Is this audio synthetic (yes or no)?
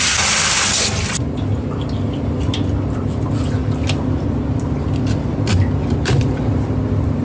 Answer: no